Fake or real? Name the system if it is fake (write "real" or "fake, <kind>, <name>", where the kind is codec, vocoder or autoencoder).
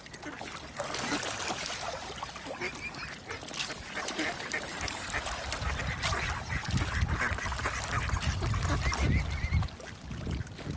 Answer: real